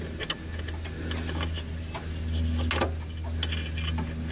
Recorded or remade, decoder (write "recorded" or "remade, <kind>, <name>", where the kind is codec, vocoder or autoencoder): recorded